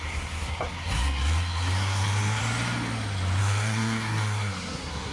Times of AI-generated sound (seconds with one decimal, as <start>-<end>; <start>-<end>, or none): 0.0-2.4; 3.4-5.1